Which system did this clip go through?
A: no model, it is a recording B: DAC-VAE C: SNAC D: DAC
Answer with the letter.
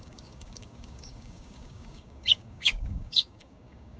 D